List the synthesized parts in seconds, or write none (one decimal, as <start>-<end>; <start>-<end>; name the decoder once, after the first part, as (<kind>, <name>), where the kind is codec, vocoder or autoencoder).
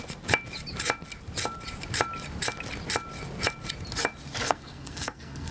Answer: 4.4-5.5 (codec, SNAC)